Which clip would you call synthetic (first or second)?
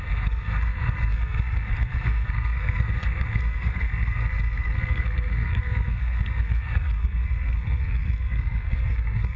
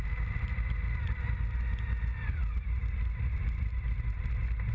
first